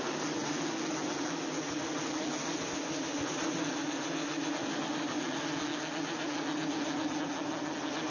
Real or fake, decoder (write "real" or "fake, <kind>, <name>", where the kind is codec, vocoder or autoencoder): real